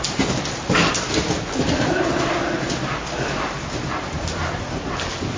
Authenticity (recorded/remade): recorded